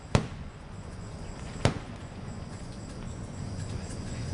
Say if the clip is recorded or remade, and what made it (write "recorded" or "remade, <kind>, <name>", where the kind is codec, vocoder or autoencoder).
remade, vocoder, Vocos